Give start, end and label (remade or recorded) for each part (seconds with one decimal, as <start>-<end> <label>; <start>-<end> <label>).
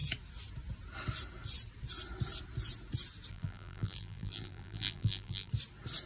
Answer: 0.0-3.3 recorded; 3.3-5.5 remade; 5.5-6.1 recorded